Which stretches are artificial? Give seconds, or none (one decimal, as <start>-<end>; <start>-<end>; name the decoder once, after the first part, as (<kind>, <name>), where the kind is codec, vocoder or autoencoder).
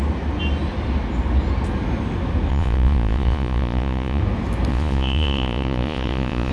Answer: 2.5-4.2 (vocoder, Vocos); 4.7-6.5